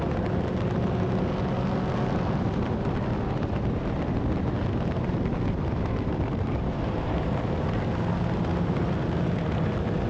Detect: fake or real real